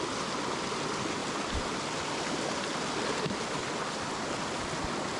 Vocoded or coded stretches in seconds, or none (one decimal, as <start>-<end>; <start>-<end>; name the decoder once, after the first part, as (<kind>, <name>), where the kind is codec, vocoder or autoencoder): none